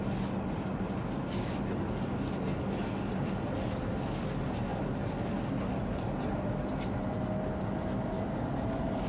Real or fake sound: real